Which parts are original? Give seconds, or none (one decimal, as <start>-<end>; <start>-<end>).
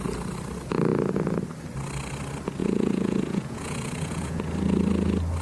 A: 0.0-2.6; 4.4-5.4